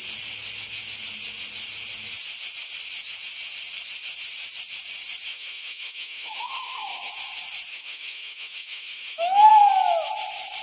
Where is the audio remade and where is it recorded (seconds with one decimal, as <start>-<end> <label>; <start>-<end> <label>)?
0.0-5.3 recorded; 5.3-7.1 remade; 7.1-7.7 recorded; 7.7-9.5 remade; 9.5-10.6 recorded